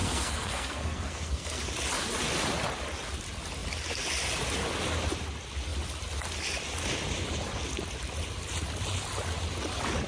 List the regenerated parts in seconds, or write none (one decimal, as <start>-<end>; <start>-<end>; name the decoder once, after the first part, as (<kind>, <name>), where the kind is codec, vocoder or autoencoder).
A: 0.0-1.6 (codec, SNAC)